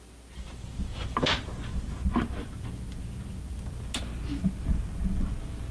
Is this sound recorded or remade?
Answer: recorded